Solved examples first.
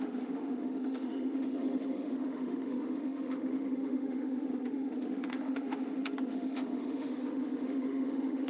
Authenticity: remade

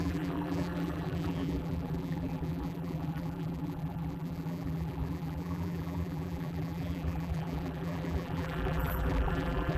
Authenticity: remade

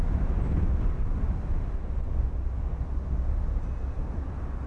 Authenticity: recorded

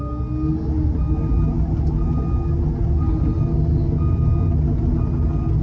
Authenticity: recorded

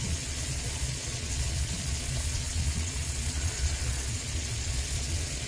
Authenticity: remade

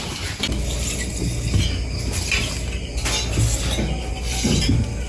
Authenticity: recorded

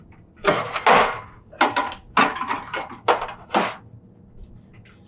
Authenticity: recorded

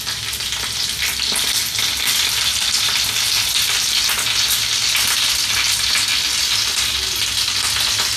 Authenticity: recorded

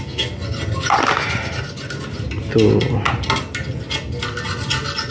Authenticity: recorded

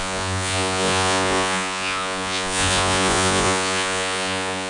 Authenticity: remade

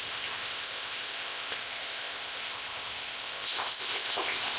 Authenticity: remade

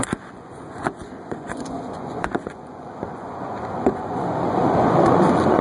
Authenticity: remade